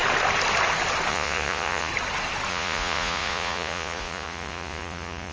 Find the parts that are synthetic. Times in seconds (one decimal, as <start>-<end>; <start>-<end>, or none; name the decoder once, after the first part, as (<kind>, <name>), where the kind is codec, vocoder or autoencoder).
1.1-1.9 (vocoder, Vocos); 2.5-5.3